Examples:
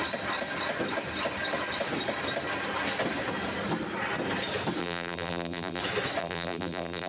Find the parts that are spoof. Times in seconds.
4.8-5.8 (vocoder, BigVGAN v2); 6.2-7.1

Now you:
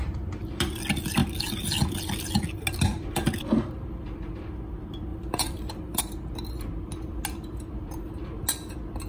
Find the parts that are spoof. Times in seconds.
5.1-6.0 (vocoder, BigVGAN v2)

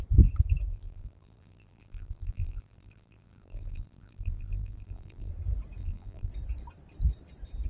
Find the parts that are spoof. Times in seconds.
0.7-5.3 (vocoder, BigVGAN v2); 5.8-6.3

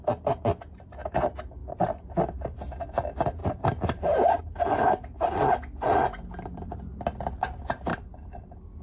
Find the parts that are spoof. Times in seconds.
1.6-2.3 (vocoder, BigVGAN v2); 3.4-4.4; 7.9-8.8

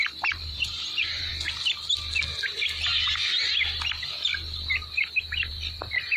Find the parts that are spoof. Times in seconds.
0.0-1.3 (vocoder, BigVGAN v2)

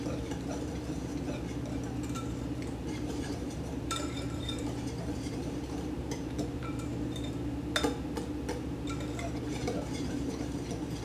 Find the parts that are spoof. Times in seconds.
0.0-1.1 (vocoder, BigVGAN v2); 2.9-6.9; 9.5-11.0

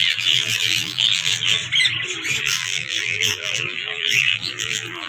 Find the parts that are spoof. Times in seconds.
0.0-1.6 (vocoder, BigVGAN v2); 2.4-5.1

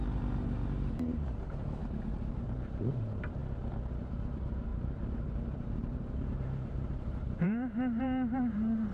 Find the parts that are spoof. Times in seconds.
0.0-1.8 (vocoder, BigVGAN v2); 2.3-3.4; 4.1-8.9